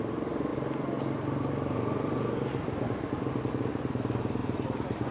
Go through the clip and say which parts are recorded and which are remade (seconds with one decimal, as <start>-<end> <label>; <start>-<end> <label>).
0.0-5.1 recorded